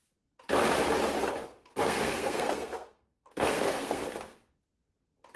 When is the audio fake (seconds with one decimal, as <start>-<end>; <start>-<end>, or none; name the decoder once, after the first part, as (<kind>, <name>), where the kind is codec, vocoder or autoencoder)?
1.4-4.6 (codec, SNAC)